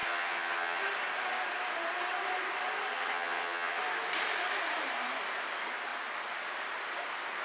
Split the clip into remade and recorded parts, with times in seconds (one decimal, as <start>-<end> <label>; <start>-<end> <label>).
0.0-0.8 remade; 0.8-2.9 recorded; 2.9-3.8 remade; 3.8-7.4 recorded